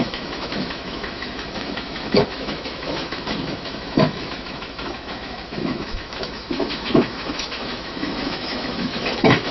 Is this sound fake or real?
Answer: fake